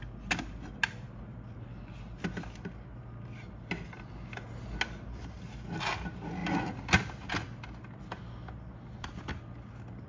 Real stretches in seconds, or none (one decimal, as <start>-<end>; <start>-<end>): 0.0-10.1